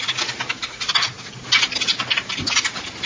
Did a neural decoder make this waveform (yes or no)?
no